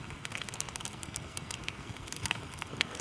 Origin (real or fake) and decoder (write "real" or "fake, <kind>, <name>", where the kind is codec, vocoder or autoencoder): fake, codec, SNAC